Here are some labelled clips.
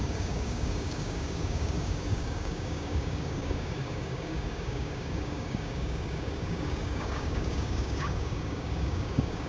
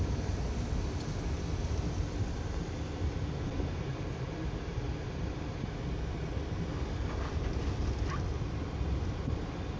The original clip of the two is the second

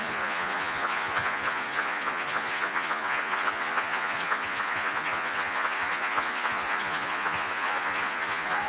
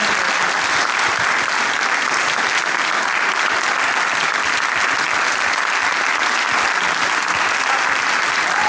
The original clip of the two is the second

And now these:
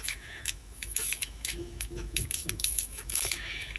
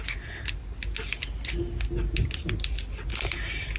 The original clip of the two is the second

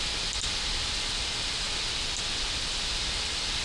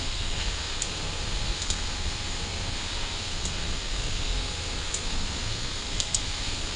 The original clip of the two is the first